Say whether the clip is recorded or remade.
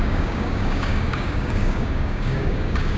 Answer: remade